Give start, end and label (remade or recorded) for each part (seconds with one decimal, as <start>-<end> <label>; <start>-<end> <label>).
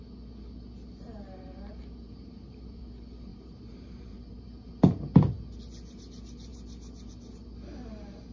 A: 0.0-1.7 recorded; 1.7-2.8 remade; 2.8-3.3 recorded; 3.3-4.5 remade; 4.5-8.3 recorded